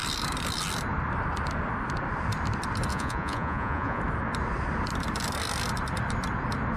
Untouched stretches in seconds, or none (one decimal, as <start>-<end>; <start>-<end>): 0.0-2.9; 4.0-6.8